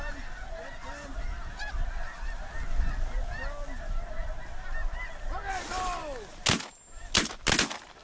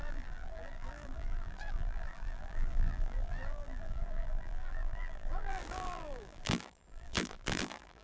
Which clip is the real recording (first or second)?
first